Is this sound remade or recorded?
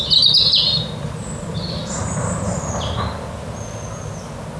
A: recorded